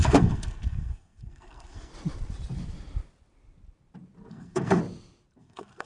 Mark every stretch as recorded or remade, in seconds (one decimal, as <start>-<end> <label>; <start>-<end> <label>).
0.0-1.9 remade; 1.9-4.3 recorded; 4.3-4.8 remade; 4.8-5.4 recorded; 5.4-5.9 remade